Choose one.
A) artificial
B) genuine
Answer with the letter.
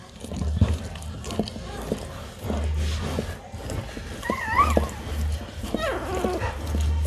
B